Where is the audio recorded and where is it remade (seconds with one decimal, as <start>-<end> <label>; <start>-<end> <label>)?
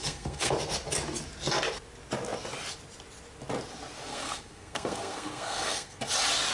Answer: 0.0-0.5 remade; 0.5-4.1 recorded; 4.1-6.0 remade; 6.0-6.5 recorded